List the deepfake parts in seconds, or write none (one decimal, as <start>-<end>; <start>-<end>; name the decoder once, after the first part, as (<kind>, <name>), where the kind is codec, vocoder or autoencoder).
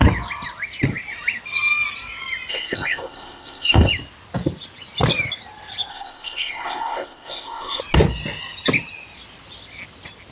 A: 2.5-3.9 (codec, ZipCodec); 5.9-7.8